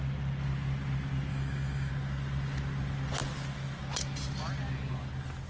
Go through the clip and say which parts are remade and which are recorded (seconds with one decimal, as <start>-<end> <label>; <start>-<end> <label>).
0.0-1.3 recorded; 1.3-1.9 remade; 1.9-5.5 recorded